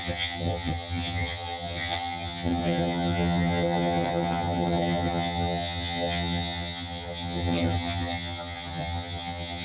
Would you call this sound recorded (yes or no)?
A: no